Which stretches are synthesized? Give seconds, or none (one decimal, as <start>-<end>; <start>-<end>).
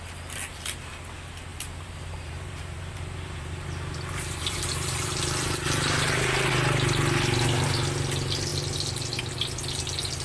1.5-6.5